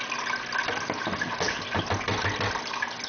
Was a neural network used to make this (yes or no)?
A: no